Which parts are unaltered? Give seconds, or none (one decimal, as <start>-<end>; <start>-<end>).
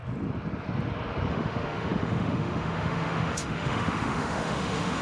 0.0-1.3